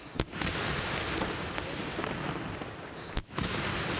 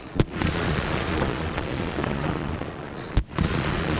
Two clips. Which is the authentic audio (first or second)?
first